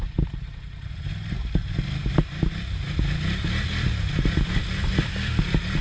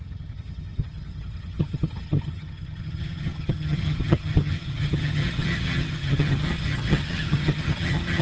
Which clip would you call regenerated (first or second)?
second